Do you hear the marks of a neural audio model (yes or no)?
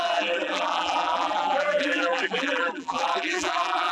yes